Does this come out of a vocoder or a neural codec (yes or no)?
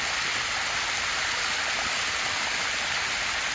no